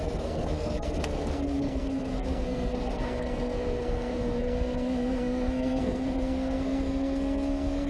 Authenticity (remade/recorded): remade